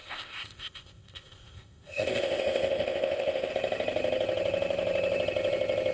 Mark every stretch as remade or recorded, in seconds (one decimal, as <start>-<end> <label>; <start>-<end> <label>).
0.0-3.5 remade; 3.5-5.9 recorded